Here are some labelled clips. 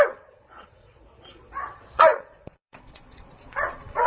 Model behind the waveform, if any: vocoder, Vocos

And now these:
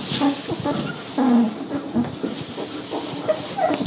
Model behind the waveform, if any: none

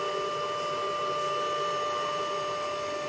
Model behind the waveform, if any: none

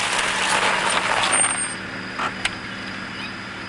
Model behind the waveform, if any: none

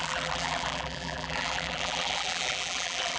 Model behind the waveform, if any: vocoder, BigVGAN v2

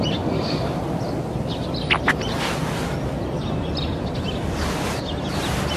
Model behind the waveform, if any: none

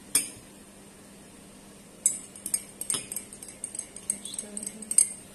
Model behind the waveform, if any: none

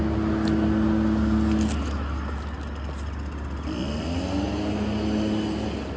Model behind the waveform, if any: none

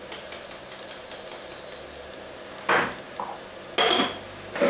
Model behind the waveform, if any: none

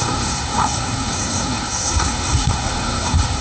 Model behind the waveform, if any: codec, SNAC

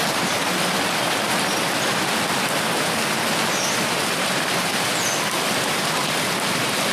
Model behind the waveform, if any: none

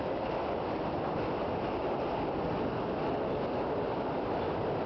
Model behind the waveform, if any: none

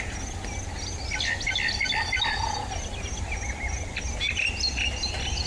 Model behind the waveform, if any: none